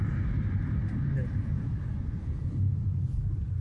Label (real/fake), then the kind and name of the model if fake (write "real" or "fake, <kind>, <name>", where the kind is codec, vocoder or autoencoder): real